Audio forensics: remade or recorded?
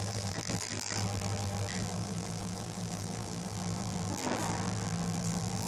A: remade